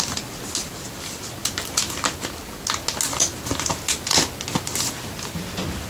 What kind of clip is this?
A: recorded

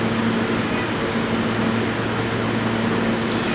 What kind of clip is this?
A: recorded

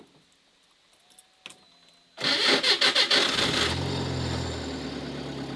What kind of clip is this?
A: recorded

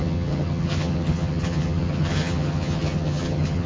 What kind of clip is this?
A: remade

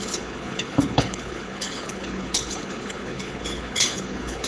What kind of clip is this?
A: remade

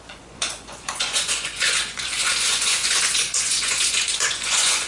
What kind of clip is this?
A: remade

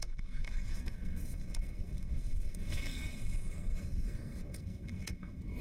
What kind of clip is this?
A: remade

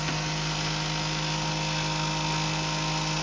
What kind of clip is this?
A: recorded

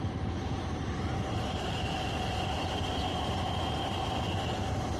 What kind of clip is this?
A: remade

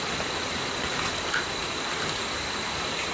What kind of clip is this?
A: recorded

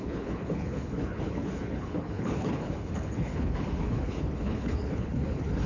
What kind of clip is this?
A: remade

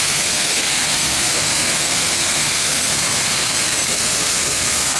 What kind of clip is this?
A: remade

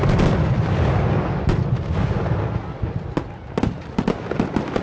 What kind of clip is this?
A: recorded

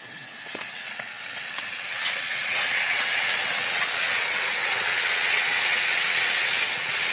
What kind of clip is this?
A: remade